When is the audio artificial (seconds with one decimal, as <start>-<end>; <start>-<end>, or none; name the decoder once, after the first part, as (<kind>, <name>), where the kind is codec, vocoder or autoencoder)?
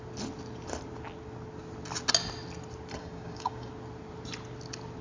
3.0-3.7 (codec, DAC)